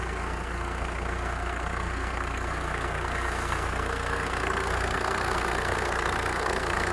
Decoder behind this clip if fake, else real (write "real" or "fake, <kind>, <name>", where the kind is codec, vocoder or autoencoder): fake, codec, SNAC